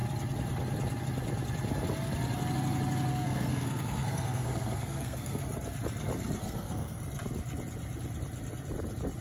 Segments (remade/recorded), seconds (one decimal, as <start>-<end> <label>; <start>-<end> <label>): 0.0-3.1 recorded; 3.1-5.4 remade; 5.4-6.4 recorded; 6.4-7.0 remade; 7.0-9.2 recorded